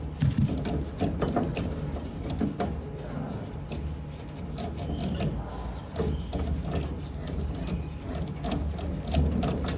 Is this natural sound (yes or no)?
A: yes